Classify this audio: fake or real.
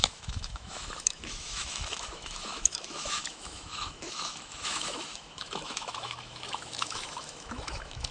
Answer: fake